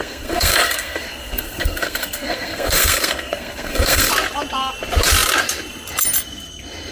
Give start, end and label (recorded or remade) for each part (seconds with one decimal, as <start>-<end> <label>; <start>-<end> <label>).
0.0-4.1 remade; 4.1-6.9 recorded